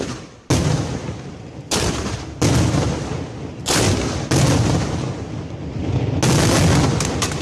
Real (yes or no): yes